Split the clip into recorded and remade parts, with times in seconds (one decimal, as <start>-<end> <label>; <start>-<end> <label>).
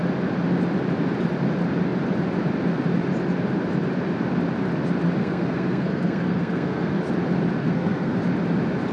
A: 0.0-5.2 recorded; 5.2-7.0 remade; 7.0-7.6 recorded; 7.6-8.2 remade; 8.2-8.9 recorded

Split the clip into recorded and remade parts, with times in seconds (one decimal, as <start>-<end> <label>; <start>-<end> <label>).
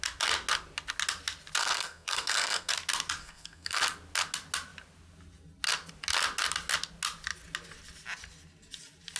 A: 0.0-1.6 recorded; 1.6-2.7 remade; 2.7-3.2 recorded; 3.2-3.8 remade; 3.8-9.2 recorded